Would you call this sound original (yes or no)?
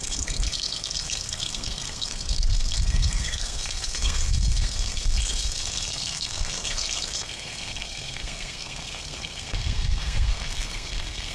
no